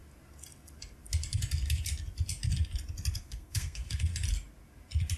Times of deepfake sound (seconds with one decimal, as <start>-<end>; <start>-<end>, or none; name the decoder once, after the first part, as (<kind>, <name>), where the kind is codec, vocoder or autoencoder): 3.1-4.1 (codec, SNAC)